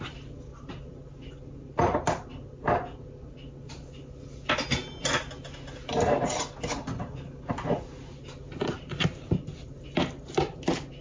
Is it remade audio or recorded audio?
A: recorded